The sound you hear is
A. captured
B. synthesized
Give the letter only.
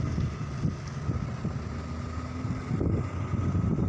A